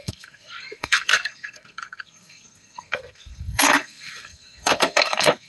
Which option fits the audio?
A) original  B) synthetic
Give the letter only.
B